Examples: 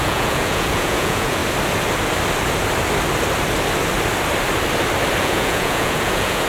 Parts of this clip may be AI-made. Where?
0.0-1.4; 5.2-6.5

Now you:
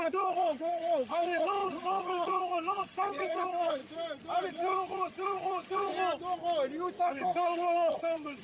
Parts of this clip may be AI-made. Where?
0.0-3.8; 4.5-5.9; 7.0-8.4

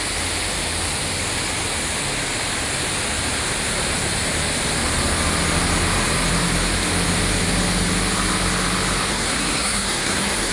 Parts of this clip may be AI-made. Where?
9.1-10.5

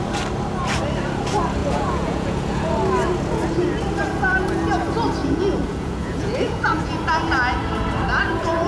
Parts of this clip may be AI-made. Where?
1.6-2.7; 5.2-6.9

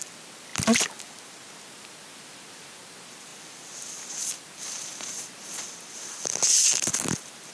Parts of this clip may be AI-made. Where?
none